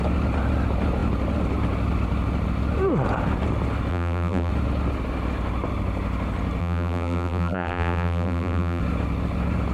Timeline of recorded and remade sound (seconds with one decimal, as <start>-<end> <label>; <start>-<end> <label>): 0.0-3.9 recorded; 3.9-4.5 remade; 4.5-6.6 recorded; 6.6-8.8 remade; 8.8-9.7 recorded